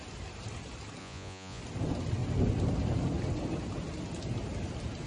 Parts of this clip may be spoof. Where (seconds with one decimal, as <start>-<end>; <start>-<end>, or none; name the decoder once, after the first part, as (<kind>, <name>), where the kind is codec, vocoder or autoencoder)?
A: 1.0-1.6 (vocoder, Vocos)